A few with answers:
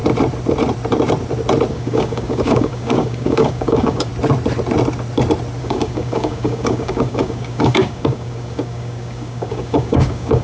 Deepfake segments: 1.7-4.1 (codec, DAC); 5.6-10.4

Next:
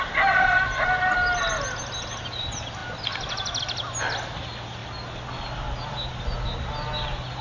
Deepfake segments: none

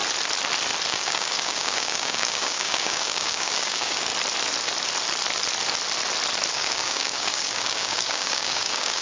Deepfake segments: 0.9-4.1 (codec, DAC); 6.5-9.0

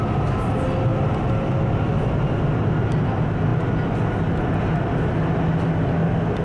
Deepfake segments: none

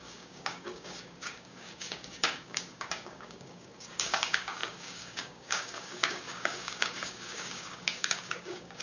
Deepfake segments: 0.0-8.8 (codec, DAC)

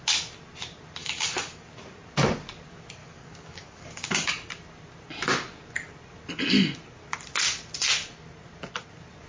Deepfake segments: 1.0-1.7 (codec, DAC); 3.0-4.3